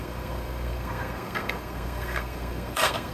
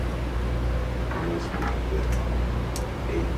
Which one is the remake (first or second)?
first